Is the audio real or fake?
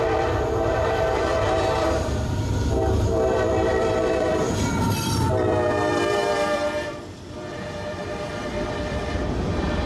fake